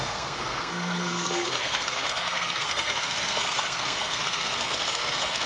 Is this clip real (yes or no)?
no